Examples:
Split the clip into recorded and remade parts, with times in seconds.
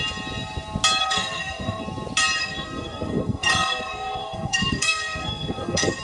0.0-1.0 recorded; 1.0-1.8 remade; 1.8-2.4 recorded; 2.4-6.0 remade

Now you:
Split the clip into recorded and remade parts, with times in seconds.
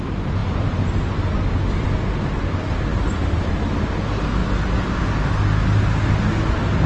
0.0-6.9 recorded